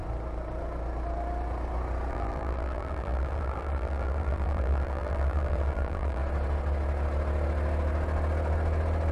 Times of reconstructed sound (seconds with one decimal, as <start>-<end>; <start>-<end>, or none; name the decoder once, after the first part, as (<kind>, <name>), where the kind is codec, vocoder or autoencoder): 2.1-6.2 (vocoder, BigVGAN v2)